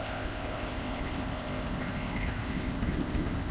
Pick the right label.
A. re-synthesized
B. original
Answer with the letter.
A